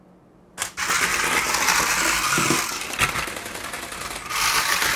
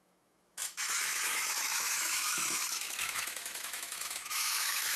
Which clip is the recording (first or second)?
first